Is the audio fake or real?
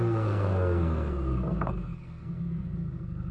fake